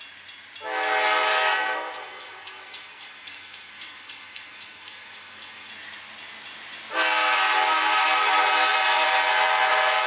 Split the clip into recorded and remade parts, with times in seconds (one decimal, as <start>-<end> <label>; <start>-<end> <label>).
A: 0.0-1.3 recorded; 1.3-5.7 remade; 5.7-10.1 recorded

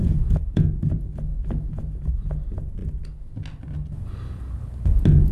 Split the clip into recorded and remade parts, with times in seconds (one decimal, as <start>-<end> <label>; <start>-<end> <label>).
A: 0.0-0.8 remade; 0.8-1.3 recorded; 1.3-2.1 remade; 2.1-5.3 recorded

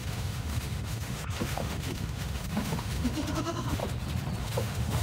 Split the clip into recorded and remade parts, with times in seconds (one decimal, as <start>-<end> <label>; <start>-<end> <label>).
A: 0.0-3.8 remade; 3.8-4.4 recorded; 4.4-5.0 remade